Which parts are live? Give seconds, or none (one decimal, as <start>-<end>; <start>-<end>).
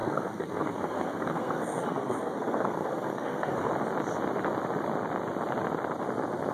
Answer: 3.7-6.5